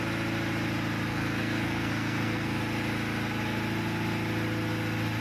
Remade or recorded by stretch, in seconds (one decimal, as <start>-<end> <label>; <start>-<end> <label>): 0.0-1.1 recorded; 1.1-2.6 remade; 2.6-5.2 recorded

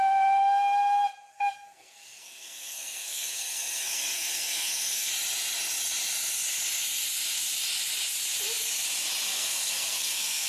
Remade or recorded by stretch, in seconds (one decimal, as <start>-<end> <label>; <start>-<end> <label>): 0.0-1.3 recorded; 1.3-5.1 remade; 5.1-9.3 recorded; 9.3-10.5 remade